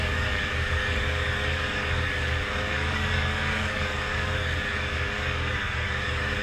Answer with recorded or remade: remade